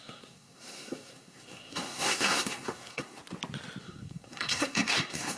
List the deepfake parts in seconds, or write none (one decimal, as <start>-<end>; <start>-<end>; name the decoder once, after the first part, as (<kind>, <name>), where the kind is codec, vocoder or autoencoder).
0.0-3.2 (codec, SNAC); 3.8-5.4